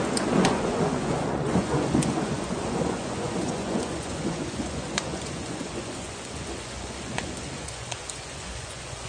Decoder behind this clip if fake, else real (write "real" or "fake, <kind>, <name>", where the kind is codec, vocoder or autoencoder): fake, vocoder, Vocos